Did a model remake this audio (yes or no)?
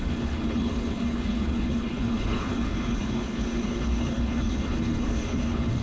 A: yes